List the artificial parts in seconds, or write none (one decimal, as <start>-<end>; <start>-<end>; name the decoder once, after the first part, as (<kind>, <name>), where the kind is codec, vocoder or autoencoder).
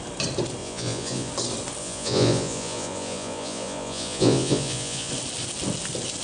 0.6-1.3 (vocoder, Vocos); 1.8-5.1